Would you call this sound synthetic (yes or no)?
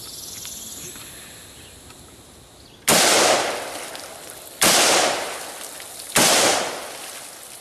no